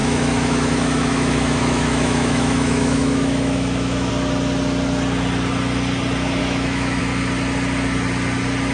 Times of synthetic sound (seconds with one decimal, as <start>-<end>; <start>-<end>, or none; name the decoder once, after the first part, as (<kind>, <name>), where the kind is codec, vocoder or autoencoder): 0.0-4.1 (autoencoder, DAC-VAE); 6.4-7.0